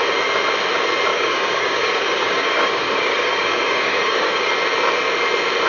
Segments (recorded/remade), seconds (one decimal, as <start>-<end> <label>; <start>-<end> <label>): 0.0-1.1 recorded; 1.1-4.5 remade; 4.5-5.7 recorded